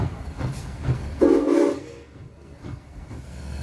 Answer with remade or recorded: remade